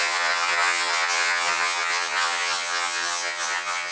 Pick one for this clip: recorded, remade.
remade